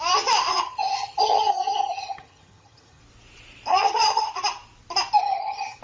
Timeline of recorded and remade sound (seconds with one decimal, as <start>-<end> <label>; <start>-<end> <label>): 0.0-0.5 recorded; 0.5-3.0 remade; 3.0-3.7 recorded; 3.7-4.3 remade; 4.3-5.2 recorded; 5.2-5.8 remade